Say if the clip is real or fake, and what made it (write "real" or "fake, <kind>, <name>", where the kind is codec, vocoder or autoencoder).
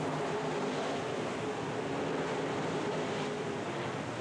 real